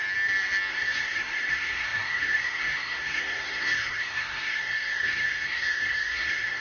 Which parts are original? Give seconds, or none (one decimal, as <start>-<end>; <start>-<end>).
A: 0.0-0.7